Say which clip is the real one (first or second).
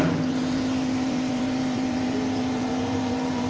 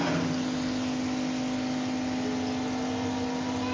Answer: second